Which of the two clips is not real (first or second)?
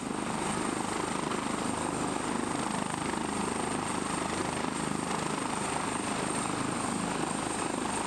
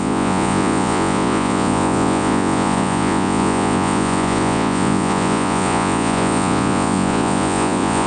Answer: second